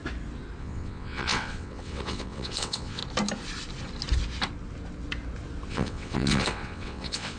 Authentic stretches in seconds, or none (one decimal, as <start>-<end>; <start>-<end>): 0.0-0.6; 3.0-5.7